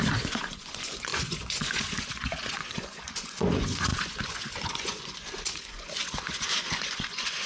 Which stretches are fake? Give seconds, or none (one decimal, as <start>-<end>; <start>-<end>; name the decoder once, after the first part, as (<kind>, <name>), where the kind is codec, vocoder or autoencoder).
0.0-7.5 (vocoder, Vocos)

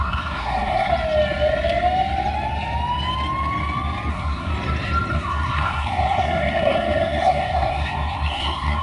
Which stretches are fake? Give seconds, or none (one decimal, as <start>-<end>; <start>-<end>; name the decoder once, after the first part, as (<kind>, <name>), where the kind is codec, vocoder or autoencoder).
0.0-0.9 (codec, SNAC); 4.1-4.5; 5.1-8.8